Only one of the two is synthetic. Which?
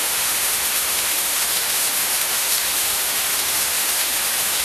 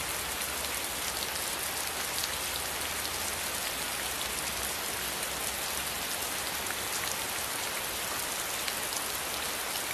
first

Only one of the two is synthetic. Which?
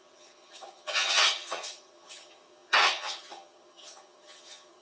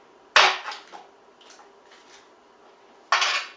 first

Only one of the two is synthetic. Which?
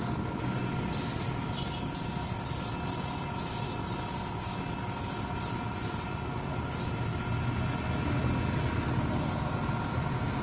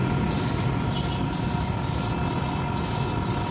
second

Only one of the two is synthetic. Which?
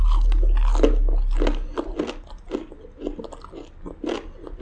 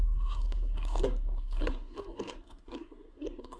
second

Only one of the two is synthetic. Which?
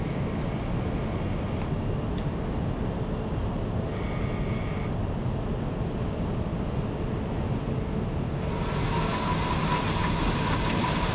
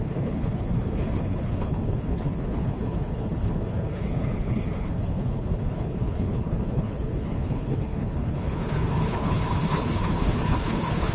second